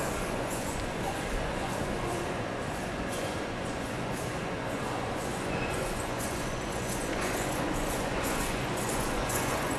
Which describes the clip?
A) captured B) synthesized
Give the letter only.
B